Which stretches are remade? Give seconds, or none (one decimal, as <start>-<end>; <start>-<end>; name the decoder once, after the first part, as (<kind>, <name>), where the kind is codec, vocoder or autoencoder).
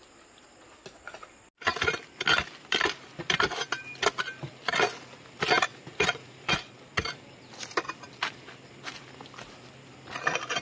5.7-6.5 (vocoder, Vocos)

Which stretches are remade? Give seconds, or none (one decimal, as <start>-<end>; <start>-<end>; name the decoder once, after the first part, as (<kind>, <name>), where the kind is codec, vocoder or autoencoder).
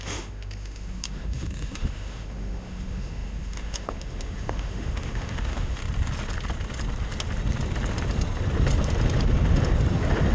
0.0-5.8 (autoencoder, DAC-VAE)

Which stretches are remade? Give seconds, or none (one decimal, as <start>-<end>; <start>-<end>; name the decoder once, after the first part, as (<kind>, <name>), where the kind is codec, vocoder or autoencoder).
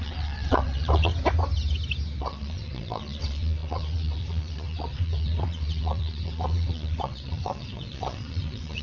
0.0-1.1 (vocoder, WaveNeXt); 2.2-8.8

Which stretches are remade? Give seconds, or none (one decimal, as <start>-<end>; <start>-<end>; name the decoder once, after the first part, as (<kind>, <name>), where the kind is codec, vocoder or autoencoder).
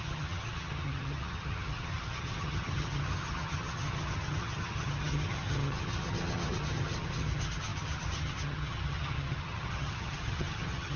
0.0-11.0 (vocoder, HiFi-GAN)